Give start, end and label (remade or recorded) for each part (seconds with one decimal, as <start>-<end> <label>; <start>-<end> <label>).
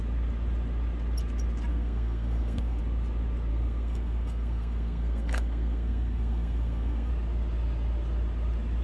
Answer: 0.0-1.7 recorded; 1.7-2.8 remade; 2.8-3.5 recorded; 3.5-7.1 remade; 7.1-8.8 recorded